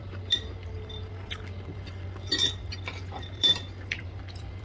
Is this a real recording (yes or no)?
no